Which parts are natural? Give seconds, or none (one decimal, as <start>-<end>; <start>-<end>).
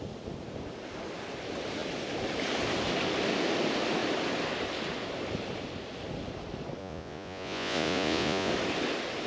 0.0-6.8; 8.5-9.3